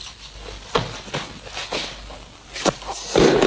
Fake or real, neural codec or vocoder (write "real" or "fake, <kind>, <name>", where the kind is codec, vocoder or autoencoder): real